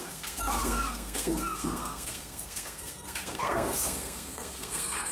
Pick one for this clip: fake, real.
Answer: fake